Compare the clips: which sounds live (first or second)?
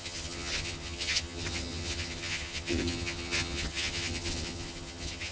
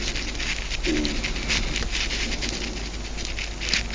second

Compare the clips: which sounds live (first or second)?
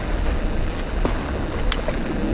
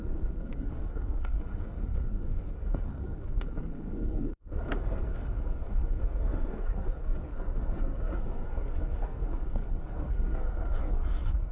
first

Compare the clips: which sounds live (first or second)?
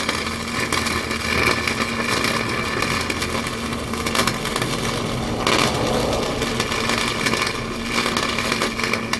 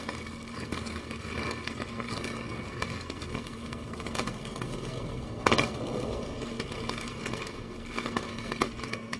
first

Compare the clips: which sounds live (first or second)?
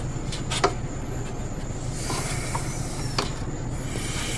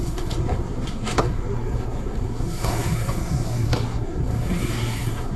first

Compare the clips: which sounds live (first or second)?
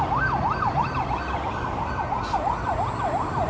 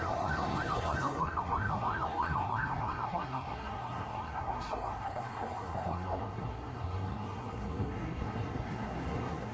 first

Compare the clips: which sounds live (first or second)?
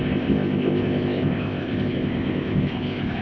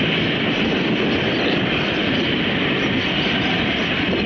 second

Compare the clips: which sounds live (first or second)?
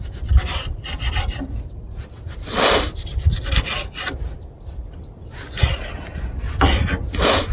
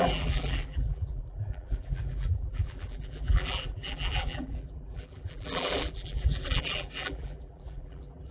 first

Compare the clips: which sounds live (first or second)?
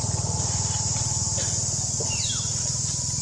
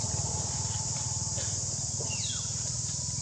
first